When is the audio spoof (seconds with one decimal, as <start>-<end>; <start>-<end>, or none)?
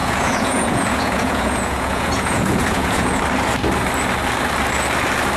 0.0-3.2